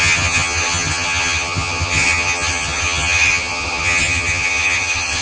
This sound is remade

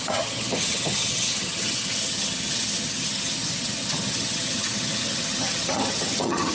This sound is remade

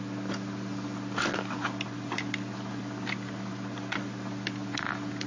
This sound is recorded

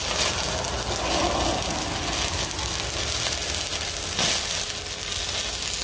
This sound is recorded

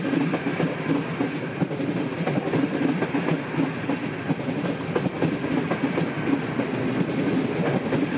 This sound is recorded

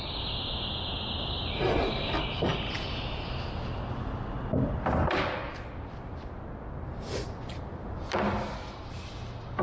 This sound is recorded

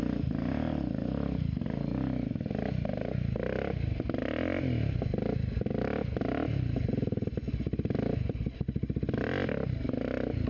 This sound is recorded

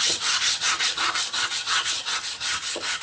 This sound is remade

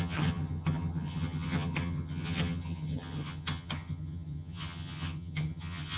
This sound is remade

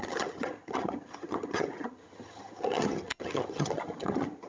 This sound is remade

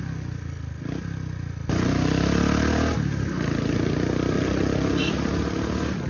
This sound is recorded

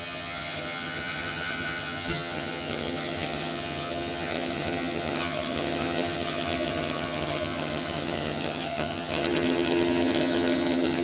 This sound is remade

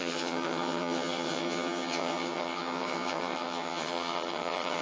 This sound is remade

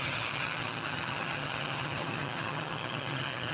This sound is remade